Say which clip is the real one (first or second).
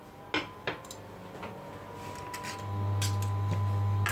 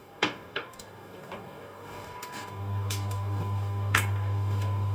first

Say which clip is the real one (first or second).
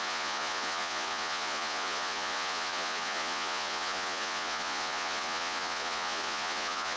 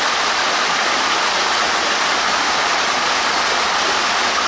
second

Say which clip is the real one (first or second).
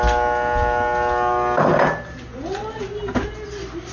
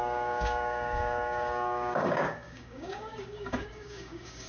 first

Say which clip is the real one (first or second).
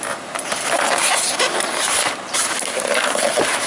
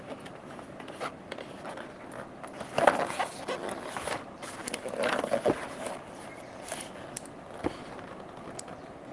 second